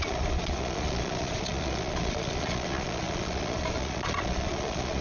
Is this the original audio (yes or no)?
no